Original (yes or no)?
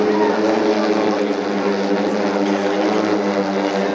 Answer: yes